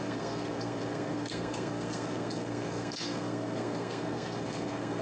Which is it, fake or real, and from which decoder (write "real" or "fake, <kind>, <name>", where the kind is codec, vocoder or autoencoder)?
fake, codec, SNAC